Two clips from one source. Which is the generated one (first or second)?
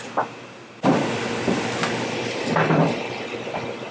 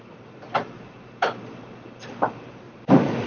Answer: second